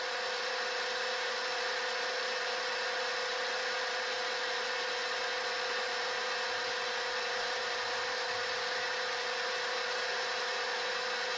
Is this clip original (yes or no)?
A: yes